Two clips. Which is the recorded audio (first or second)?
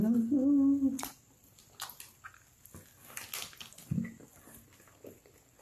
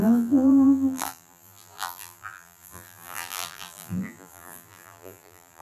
first